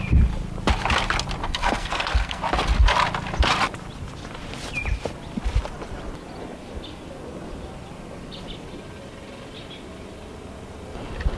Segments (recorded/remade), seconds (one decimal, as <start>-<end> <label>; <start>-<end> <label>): 0.0-1.4 recorded; 1.4-2.4 remade; 2.4-11.4 recorded